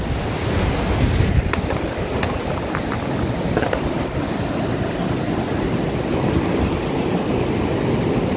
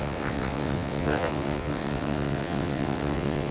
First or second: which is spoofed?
second